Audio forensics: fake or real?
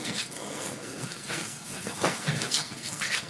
fake